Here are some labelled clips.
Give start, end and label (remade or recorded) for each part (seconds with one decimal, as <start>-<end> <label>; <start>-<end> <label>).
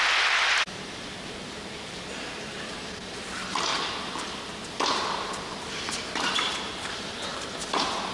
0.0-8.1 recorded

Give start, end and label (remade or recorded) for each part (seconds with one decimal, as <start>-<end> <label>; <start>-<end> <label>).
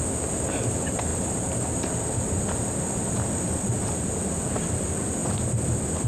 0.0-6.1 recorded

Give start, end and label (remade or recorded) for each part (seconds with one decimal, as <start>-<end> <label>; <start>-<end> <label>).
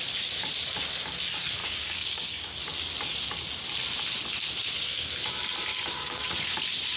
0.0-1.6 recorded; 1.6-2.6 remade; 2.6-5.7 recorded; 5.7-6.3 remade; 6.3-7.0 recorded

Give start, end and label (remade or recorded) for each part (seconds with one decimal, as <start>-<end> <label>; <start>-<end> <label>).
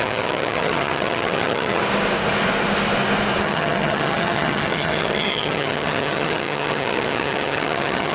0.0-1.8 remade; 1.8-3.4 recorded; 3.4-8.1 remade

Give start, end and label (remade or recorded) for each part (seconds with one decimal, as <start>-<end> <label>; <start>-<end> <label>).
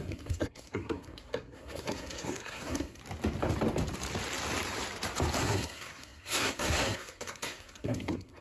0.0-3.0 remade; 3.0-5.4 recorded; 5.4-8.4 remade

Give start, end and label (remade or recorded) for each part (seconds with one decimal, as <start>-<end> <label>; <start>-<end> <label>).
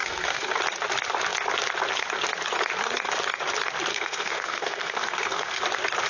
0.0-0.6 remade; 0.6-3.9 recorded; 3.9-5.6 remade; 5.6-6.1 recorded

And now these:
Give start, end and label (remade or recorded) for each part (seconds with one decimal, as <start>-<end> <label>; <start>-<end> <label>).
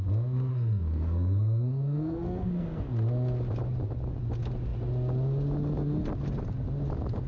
0.0-0.5 recorded; 0.5-2.8 remade; 2.8-7.3 recorded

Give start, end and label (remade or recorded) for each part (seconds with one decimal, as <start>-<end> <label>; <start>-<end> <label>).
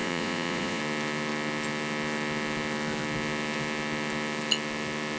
0.0-0.8 remade; 0.8-5.2 recorded